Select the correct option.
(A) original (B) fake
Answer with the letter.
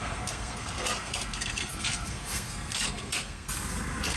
B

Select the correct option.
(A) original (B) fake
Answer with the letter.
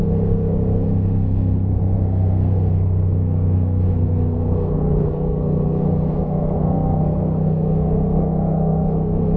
B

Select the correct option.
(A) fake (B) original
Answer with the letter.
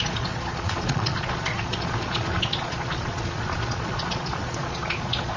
A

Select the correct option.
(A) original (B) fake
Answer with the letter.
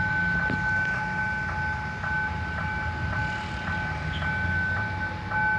A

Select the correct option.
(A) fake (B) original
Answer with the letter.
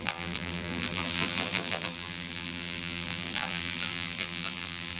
A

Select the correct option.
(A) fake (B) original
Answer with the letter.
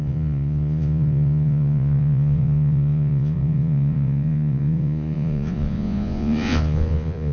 A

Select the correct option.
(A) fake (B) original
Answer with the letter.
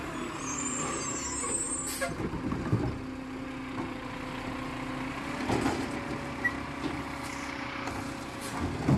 B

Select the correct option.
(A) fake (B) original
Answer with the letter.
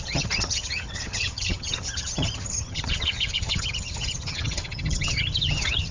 A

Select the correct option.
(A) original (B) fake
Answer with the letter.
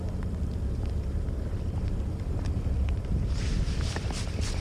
B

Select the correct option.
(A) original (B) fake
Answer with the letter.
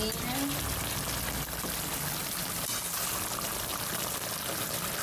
A